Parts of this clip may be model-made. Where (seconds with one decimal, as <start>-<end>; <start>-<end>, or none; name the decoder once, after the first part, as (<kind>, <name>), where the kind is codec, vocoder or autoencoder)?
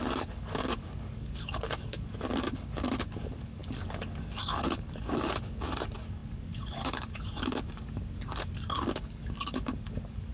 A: 0.0-10.3 (codec, DAC)